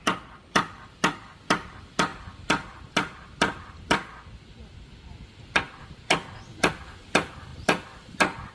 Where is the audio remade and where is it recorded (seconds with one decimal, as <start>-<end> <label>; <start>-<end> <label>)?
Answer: 0.0-4.6 remade; 4.6-6.7 recorded; 6.7-8.5 remade